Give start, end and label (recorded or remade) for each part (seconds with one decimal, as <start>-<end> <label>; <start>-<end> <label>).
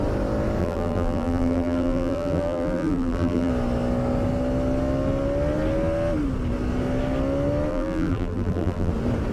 0.0-0.6 recorded; 0.6-3.5 remade; 3.5-7.7 recorded; 7.7-8.9 remade; 8.9-9.3 recorded